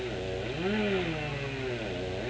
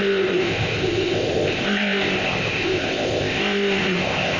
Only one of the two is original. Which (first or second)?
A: first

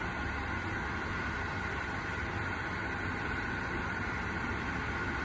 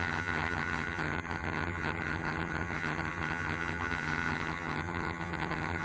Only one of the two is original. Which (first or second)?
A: first